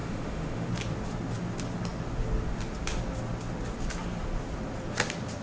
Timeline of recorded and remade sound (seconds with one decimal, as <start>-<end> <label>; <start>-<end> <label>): 0.0-0.7 remade; 0.7-5.4 recorded